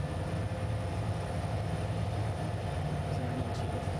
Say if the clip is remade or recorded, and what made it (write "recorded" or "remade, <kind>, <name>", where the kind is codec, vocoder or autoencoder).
recorded